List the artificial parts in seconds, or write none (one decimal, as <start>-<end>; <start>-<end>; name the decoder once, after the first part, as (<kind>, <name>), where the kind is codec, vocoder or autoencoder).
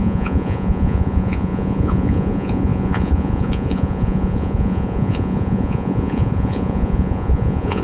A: 0.0-7.8 (vocoder, Vocos)